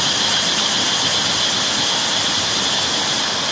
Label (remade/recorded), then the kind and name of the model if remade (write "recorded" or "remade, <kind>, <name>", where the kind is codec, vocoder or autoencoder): recorded